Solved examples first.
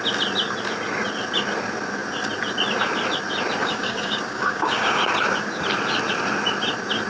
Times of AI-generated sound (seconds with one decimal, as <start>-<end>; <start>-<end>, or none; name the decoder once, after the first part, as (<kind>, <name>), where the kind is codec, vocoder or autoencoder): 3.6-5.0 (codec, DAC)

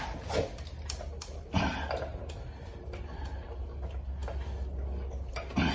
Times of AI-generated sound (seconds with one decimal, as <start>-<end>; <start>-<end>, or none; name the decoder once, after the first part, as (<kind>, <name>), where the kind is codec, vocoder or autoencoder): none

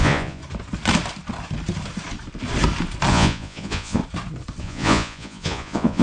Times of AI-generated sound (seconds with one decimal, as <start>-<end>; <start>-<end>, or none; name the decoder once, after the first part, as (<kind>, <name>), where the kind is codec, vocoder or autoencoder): 0.0-0.4 (vocoder, Vocos); 3.1-4.0; 4.6-6.0

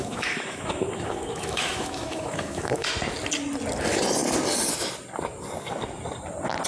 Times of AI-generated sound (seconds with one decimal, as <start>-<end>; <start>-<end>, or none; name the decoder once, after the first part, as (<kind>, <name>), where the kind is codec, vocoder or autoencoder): 0.0-2.9 (autoencoder, DAC-VAE)

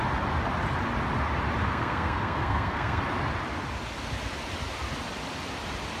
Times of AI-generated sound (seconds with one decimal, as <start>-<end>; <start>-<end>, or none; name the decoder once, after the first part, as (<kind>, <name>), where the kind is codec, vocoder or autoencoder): 1.6-3.0 (codec, SNAC)

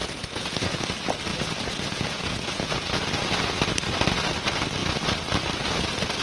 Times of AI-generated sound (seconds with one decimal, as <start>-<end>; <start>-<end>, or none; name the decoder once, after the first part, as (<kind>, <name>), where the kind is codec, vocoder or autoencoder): 0.0-0.8 (vocoder, Vocos); 1.3-3.0